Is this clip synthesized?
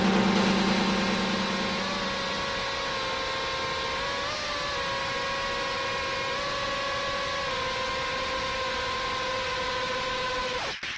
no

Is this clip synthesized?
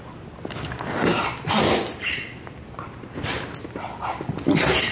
no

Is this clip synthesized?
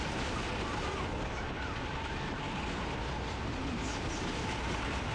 no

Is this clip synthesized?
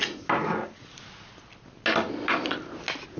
no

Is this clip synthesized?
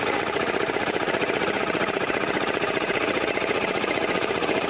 yes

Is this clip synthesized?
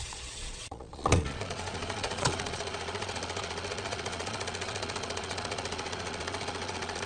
yes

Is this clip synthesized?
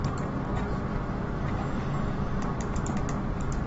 no